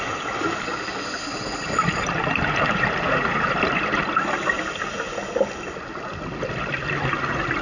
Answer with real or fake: real